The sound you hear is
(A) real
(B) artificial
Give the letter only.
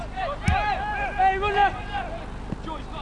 A